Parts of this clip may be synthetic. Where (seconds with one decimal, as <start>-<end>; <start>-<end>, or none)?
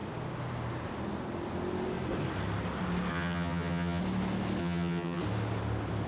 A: 3.1-4.0; 4.6-5.2